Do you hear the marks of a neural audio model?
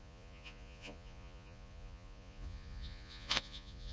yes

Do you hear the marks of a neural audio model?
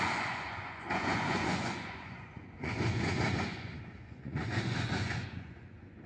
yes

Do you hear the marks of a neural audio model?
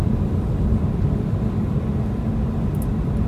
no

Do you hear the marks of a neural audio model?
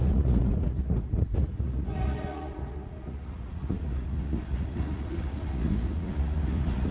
yes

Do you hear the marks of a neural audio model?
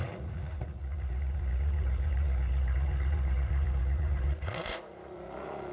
yes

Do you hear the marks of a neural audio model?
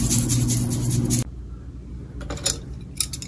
no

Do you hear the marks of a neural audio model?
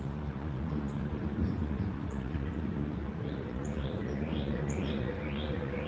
yes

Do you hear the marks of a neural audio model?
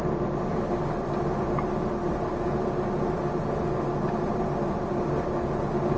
no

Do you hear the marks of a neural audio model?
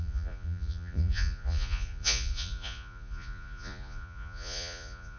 yes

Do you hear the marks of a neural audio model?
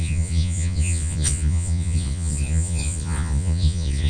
yes